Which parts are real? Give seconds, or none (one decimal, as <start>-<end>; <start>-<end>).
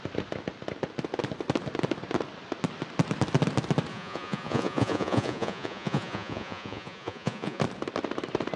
0.0-3.9; 7.6-8.6